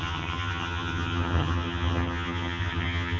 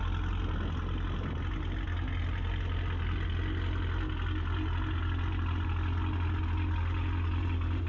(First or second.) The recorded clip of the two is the second